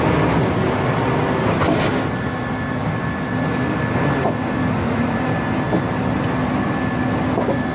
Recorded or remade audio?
recorded